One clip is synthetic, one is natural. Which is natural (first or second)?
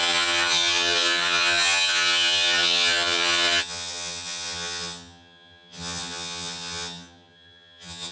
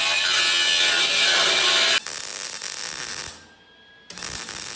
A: second